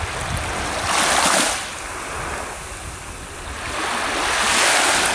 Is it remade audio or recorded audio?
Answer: recorded